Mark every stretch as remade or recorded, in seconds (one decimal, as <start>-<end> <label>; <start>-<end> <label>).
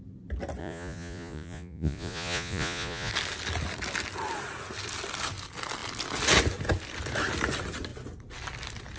0.0-0.6 recorded; 0.6-3.1 remade; 3.1-9.0 recorded